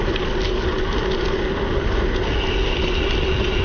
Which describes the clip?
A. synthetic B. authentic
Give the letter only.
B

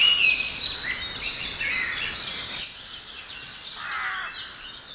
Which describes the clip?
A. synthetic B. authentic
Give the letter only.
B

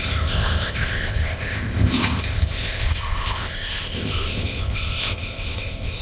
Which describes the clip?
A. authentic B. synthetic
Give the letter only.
B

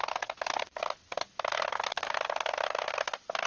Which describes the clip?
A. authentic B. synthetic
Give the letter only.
A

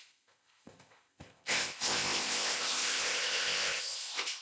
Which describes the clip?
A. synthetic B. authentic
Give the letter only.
A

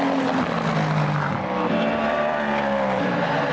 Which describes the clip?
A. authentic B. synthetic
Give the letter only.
A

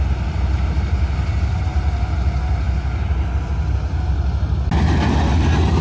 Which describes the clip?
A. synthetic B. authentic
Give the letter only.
B